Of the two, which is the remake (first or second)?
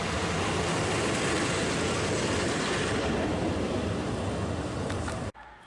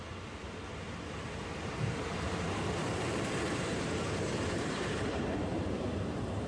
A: second